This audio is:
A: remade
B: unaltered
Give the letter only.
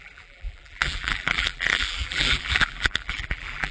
A